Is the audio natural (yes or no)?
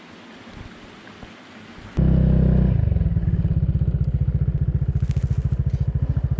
yes